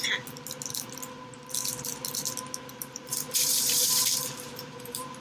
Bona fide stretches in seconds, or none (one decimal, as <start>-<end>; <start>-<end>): 0.0-2.7